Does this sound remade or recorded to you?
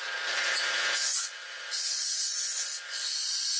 remade